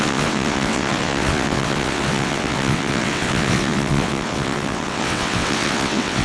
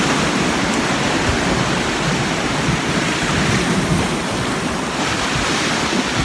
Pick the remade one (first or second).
first